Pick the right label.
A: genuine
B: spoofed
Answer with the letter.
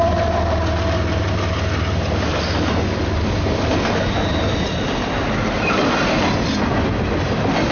A